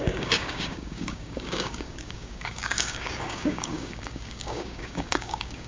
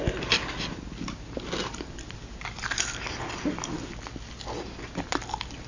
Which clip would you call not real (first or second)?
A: first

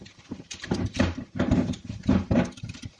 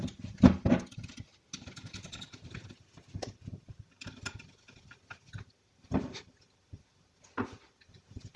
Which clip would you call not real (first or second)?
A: first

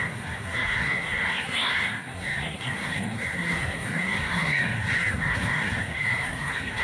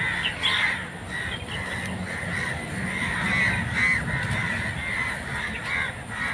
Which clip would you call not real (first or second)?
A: first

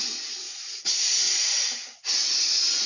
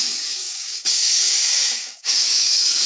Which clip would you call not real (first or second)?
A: second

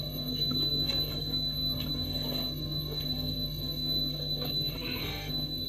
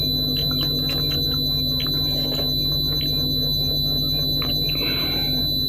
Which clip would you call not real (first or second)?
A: first